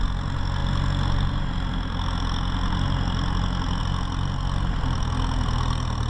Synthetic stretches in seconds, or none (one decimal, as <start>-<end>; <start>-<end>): none